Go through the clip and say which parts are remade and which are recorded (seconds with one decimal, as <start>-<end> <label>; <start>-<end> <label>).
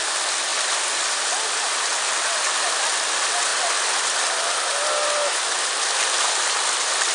0.0-7.1 recorded